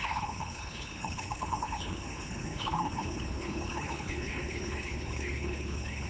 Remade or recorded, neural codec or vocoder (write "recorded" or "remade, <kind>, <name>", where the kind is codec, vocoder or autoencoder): remade, codec, HILCodec